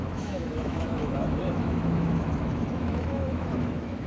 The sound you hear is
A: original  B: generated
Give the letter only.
B